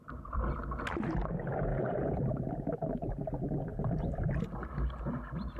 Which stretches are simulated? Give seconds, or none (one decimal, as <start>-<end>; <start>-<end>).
1.7-2.3; 3.7-4.5